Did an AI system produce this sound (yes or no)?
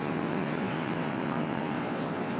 yes